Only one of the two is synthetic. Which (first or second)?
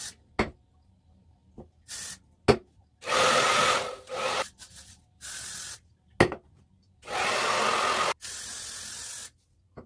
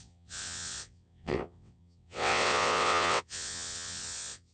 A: second